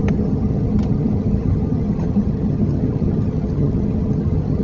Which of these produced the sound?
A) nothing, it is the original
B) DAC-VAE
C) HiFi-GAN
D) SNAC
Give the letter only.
C